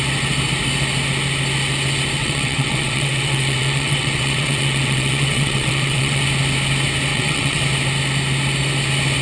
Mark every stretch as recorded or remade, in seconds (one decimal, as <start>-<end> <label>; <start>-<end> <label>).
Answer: 0.0-2.2 recorded; 2.2-6.2 remade; 6.2-7.1 recorded; 7.1-7.6 remade; 7.6-9.2 recorded

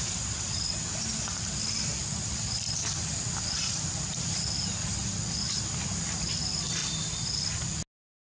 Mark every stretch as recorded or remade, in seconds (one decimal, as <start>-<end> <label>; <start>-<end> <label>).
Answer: 0.0-1.9 recorded; 1.9-4.9 remade; 4.9-6.8 recorded; 6.8-7.4 remade; 7.4-8.2 recorded

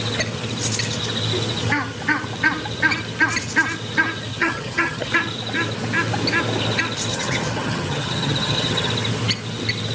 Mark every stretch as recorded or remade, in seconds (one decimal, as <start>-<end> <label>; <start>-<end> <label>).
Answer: 0.0-4.3 recorded; 4.3-5.1 remade; 5.1-7.1 recorded; 7.1-8.9 remade; 8.9-9.9 recorded